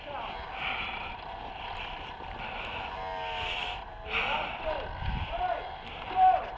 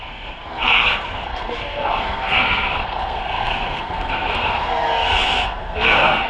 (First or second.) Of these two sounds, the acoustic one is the first